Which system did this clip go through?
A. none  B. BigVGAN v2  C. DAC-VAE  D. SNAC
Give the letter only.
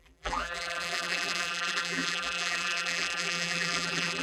B